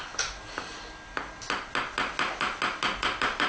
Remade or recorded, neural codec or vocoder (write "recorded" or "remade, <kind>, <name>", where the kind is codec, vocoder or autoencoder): recorded